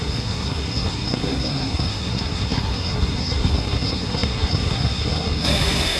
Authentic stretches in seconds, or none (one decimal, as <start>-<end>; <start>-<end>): none